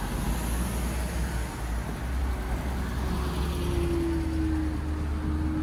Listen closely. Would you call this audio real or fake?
real